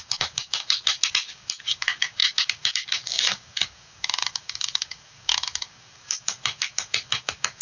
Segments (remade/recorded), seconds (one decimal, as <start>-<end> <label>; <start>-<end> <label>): 0.0-7.6 remade